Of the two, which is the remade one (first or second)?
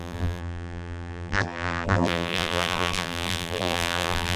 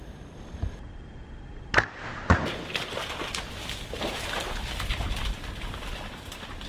first